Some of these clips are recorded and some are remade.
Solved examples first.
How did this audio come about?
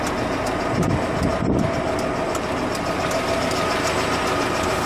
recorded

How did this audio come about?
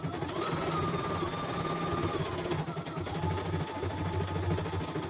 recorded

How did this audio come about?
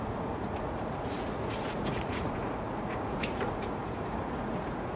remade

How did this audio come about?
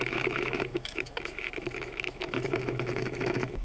remade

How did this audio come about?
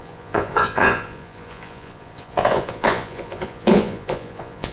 remade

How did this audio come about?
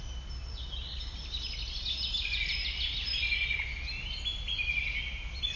recorded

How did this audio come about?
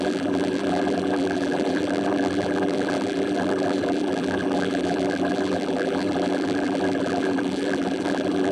remade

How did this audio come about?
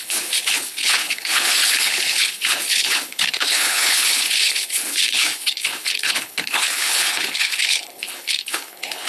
remade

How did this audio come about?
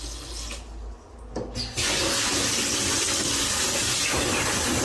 recorded